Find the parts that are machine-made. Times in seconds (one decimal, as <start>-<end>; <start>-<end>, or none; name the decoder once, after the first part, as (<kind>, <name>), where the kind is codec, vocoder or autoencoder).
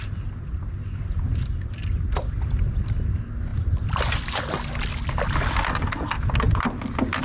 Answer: none